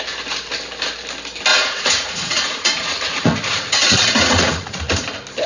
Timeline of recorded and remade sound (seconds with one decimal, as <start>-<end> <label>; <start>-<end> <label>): 0.0-1.5 recorded; 1.5-4.8 remade; 4.8-5.5 recorded